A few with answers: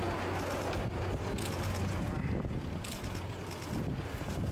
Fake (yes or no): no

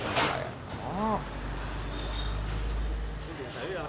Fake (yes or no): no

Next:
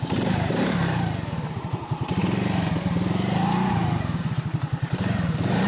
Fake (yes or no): yes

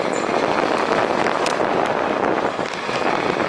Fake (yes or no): no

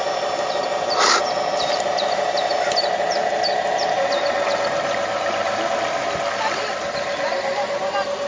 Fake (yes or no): no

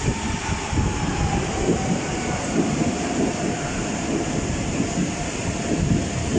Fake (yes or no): no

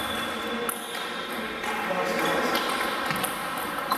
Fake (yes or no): no